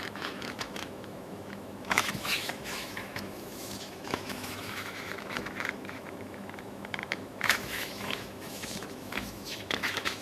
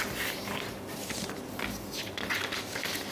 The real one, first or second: second